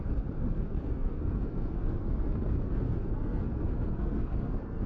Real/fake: fake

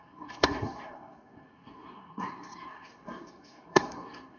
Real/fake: fake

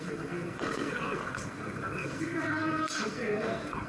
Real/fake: fake